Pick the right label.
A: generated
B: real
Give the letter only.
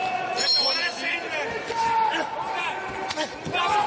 B